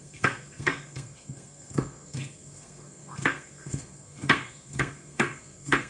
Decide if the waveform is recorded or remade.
remade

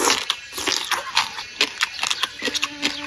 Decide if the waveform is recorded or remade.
recorded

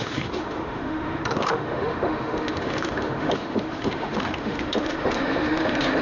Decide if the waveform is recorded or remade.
remade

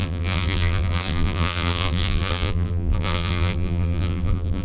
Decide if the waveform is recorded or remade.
remade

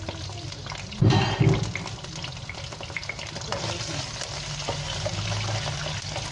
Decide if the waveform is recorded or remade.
recorded